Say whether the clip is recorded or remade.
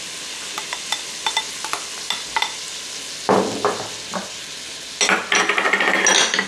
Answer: recorded